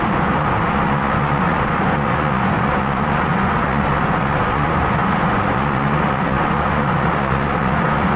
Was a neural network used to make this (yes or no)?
yes